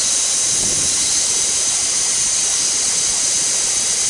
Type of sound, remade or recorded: recorded